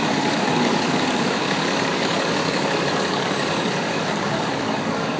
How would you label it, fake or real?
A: fake